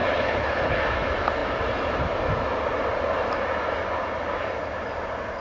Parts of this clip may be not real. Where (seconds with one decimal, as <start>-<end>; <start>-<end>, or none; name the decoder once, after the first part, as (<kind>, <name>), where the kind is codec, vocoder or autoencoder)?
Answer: 0.0-0.8 (codec, HILCodec)